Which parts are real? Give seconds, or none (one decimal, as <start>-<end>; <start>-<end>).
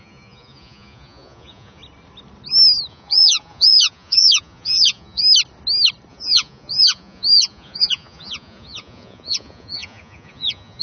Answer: 1.8-2.9; 5.2-6.1